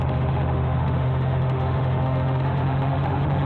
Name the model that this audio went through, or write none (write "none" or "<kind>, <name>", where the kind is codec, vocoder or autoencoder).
autoencoder, DAC-VAE